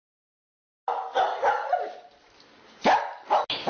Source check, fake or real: real